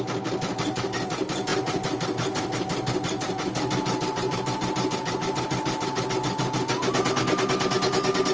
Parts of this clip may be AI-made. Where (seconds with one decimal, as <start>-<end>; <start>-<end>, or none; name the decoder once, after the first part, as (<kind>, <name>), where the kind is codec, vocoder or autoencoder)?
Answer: none

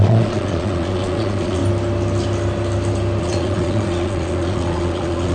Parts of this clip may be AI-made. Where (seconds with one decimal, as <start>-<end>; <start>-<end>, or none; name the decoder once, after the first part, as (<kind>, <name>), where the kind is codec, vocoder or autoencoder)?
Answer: 0.0-1.6 (vocoder, Vocos); 3.2-5.3

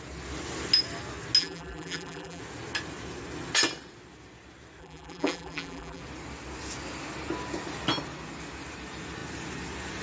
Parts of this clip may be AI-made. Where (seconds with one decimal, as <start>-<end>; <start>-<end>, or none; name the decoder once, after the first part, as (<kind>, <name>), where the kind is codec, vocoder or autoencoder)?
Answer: 1.4-2.4 (vocoder, BigVGAN v2); 4.8-6.0

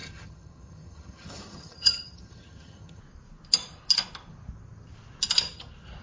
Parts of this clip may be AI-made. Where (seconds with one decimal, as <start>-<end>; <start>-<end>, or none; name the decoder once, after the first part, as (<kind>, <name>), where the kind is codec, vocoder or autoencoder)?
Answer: 0.0-3.0 (vocoder, HiFi-GAN)